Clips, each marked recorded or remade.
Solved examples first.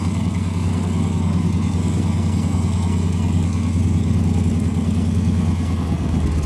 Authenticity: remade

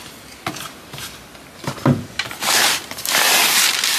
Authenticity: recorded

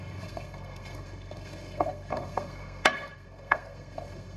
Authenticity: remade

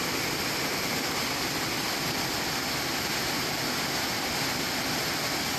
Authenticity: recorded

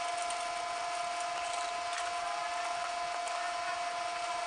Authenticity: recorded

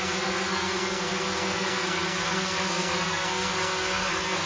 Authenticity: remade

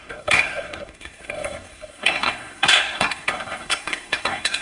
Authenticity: remade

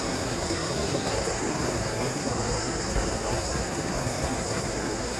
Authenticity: remade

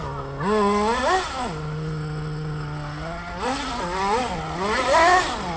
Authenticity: recorded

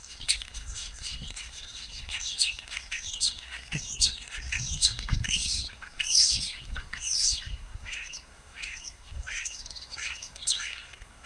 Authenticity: remade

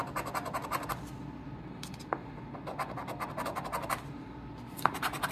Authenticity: recorded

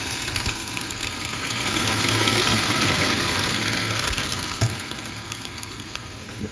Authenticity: remade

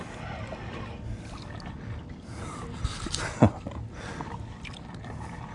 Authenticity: recorded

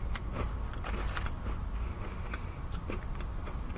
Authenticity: recorded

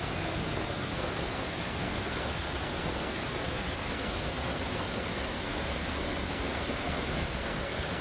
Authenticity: remade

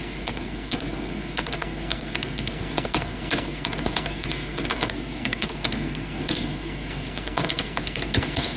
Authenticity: remade